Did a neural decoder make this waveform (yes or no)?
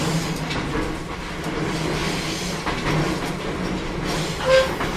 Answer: no